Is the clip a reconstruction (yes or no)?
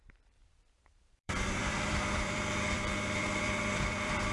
yes